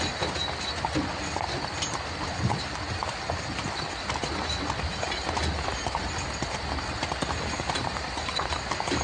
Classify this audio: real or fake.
real